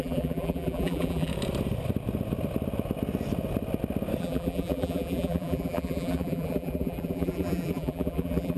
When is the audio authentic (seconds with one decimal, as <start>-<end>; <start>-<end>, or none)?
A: 1.3-4.2